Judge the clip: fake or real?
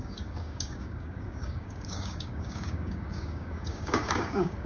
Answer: fake